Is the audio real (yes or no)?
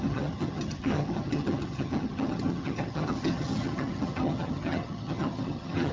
no